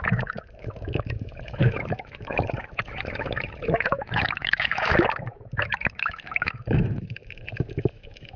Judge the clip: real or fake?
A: fake